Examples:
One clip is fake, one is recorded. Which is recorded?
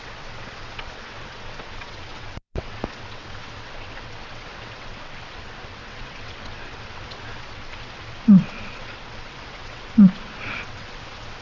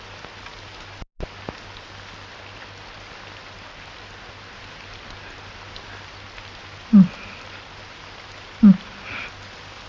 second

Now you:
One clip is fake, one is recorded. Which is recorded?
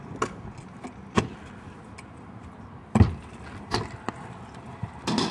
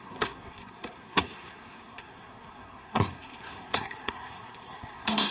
first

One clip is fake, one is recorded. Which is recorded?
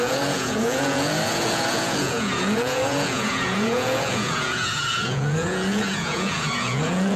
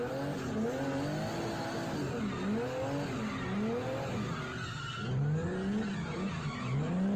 second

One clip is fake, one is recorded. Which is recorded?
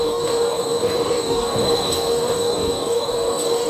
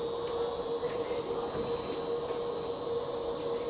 second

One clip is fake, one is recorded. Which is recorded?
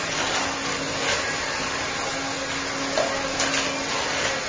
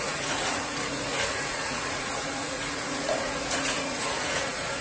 first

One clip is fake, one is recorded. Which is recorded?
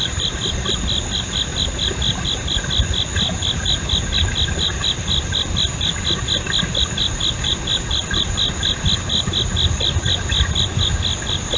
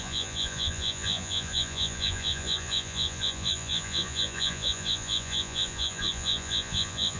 first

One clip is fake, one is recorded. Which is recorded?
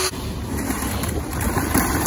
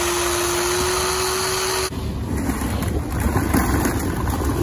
second